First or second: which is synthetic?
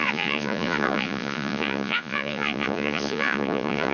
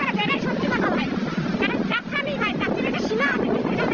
first